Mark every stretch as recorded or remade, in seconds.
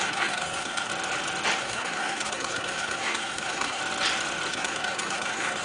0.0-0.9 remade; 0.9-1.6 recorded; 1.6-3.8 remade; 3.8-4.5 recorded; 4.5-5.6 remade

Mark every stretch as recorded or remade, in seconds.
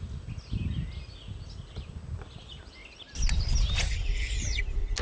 0.0-5.0 recorded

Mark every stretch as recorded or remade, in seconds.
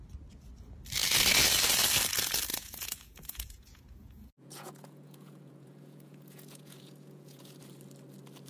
0.0-2.5 recorded; 2.5-7.6 remade; 7.6-8.5 recorded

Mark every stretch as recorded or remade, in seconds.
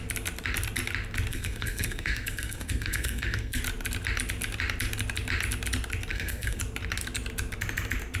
0.0-1.3 recorded; 1.3-3.6 remade; 3.6-6.1 recorded; 6.1-6.6 remade; 6.6-8.2 recorded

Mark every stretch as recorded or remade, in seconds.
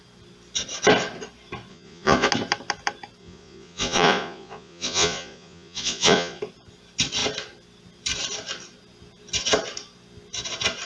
0.0-1.7 recorded; 1.7-2.3 remade; 2.3-3.2 recorded; 3.2-6.4 remade; 6.4-10.9 recorded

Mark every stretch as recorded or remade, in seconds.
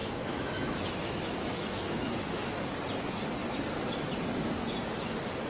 0.0-2.5 remade; 2.5-5.5 recorded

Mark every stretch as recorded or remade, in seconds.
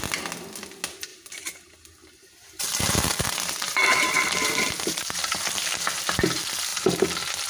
0.0-1.1 recorded; 1.1-5.6 remade; 5.6-7.5 recorded